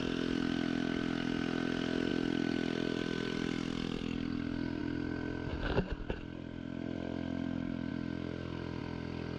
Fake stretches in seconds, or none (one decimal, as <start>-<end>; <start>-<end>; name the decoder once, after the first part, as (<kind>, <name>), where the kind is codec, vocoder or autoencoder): 2.1-4.8 (vocoder, BigVGAN v2); 5.5-7.9